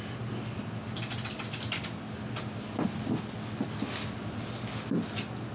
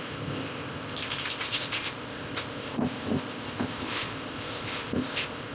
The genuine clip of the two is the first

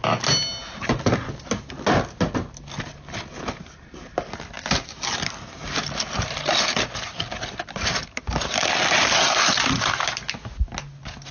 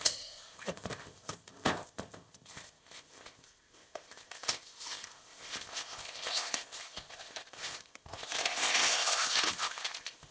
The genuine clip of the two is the first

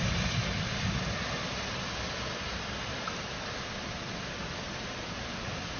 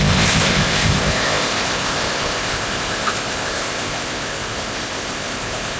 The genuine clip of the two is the first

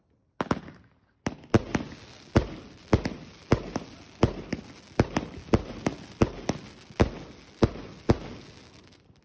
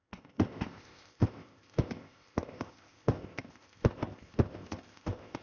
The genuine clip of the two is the first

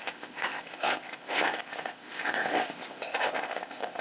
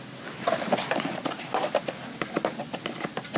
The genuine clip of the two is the second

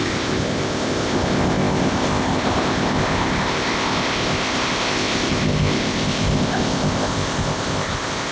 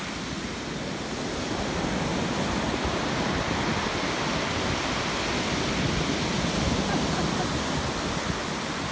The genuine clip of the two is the second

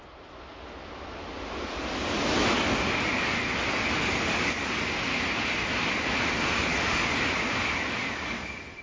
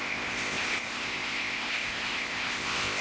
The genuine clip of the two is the first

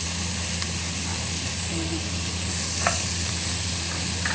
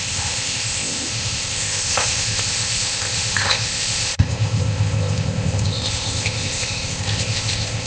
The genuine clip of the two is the first